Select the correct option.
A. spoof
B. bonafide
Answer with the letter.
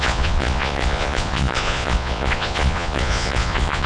A